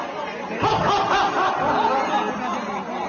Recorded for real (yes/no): yes